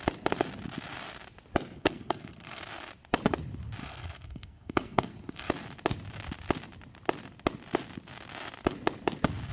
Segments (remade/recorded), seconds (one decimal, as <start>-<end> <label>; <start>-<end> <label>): 0.0-1.8 recorded; 1.8-2.6 remade; 2.6-3.8 recorded; 3.8-5.5 remade; 5.5-9.5 recorded